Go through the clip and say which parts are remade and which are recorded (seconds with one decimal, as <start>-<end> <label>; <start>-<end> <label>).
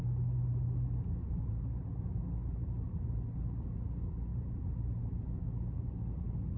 0.0-1.2 recorded; 1.2-2.2 remade; 2.2-2.6 recorded; 2.6-3.1 remade; 3.1-4.3 recorded; 4.3-5.0 remade; 5.0-6.6 recorded